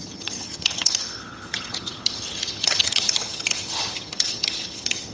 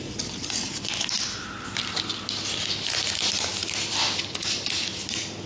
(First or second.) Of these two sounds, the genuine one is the second